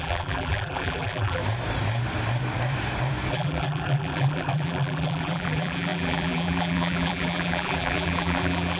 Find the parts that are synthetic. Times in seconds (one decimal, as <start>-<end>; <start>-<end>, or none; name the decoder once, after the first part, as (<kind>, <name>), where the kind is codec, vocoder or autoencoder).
0.0-1.4 (vocoder, BigVGAN v2); 3.3-8.8